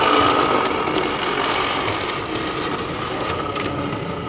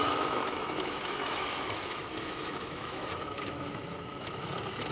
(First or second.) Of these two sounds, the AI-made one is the second